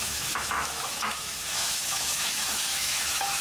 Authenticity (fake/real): fake